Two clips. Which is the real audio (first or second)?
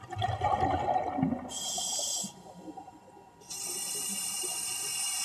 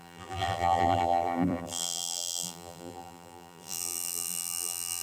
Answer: first